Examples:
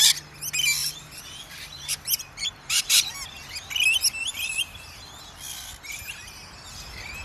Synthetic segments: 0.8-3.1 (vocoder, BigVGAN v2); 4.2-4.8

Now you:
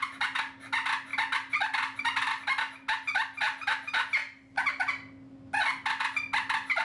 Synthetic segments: none